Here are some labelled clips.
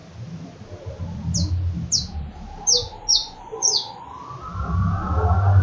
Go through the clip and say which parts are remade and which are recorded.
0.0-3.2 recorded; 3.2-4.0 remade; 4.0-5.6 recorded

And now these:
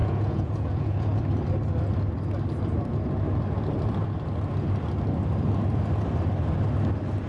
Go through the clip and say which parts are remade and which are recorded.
0.0-1.2 remade; 1.2-7.3 recorded

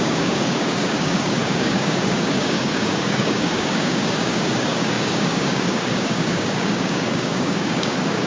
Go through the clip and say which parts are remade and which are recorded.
0.0-8.3 remade

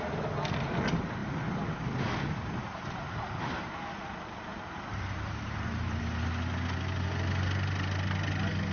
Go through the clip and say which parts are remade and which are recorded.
0.0-2.6 recorded; 2.6-6.0 remade; 6.0-8.7 recorded

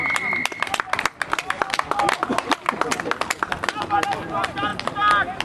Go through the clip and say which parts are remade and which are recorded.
0.0-5.4 recorded

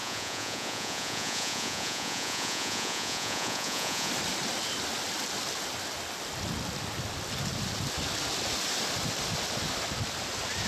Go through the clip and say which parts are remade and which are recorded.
0.0-4.1 remade; 4.1-10.7 recorded

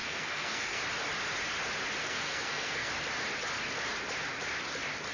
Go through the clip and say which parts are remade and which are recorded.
0.0-0.8 remade; 0.8-2.0 recorded; 2.0-2.9 remade; 2.9-5.1 recorded

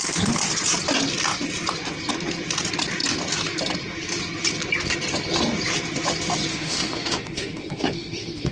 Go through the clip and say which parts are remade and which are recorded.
0.0-6.5 recorded; 6.5-8.5 remade